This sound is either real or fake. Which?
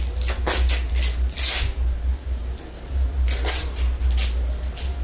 real